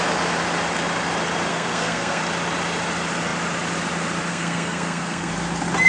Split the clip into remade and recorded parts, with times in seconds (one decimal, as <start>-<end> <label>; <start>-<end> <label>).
0.0-1.5 recorded; 1.5-2.2 remade; 2.2-4.3 recorded; 4.3-5.3 remade; 5.3-5.9 recorded